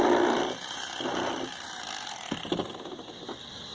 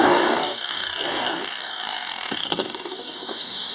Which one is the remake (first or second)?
second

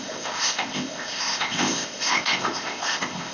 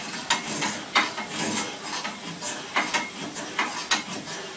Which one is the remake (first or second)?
first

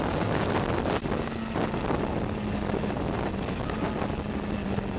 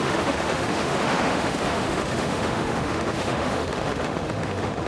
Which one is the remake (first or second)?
second